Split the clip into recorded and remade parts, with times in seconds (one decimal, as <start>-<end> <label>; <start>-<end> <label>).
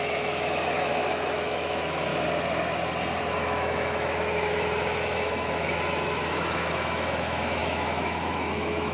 0.0-2.1 remade; 2.1-3.2 recorded; 3.2-8.9 remade